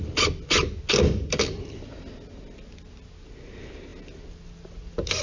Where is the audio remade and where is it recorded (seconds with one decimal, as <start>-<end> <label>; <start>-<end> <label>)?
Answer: 0.0-5.2 recorded